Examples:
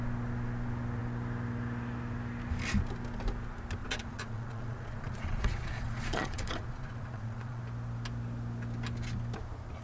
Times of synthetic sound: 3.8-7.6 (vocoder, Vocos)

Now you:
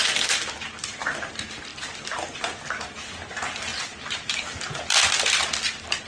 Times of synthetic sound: 0.0-1.7 (vocoder, BigVGAN v2); 3.0-3.7

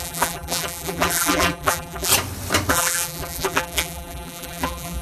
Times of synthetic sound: 0.0-2.1 (vocoder, BigVGAN v2); 2.7-5.0

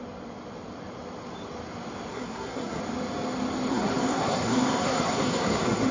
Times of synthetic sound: 2.1-2.8 (codec, SNAC); 3.7-5.9